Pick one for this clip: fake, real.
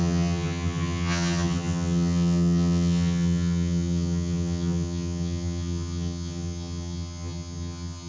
fake